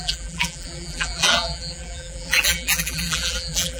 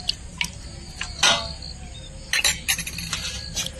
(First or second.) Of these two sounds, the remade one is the first